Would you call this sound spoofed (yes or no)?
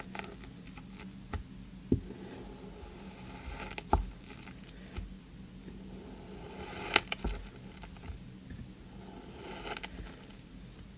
no